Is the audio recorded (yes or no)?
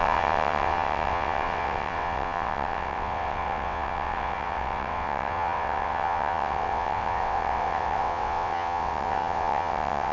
no